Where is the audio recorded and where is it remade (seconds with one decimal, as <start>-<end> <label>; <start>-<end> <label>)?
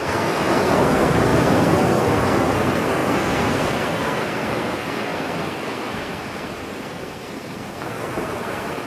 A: 0.0-8.9 remade